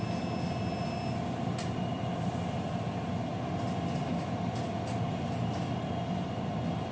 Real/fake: real